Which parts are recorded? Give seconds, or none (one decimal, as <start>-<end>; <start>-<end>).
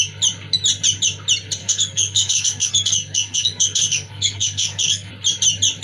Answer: 0.0-1.6; 5.1-5.8